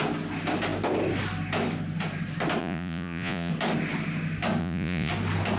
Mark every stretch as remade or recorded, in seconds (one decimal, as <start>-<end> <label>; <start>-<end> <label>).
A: 0.0-2.6 recorded; 2.6-3.5 remade; 3.5-4.6 recorded; 4.6-5.1 remade; 5.1-5.6 recorded